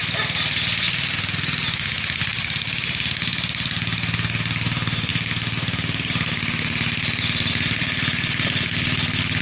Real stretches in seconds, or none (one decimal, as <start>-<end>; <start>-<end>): 0.0-9.4